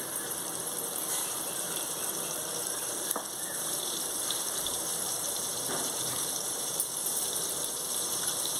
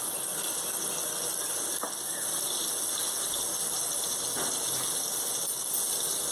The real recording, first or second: second